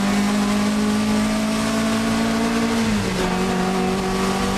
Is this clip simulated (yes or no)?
no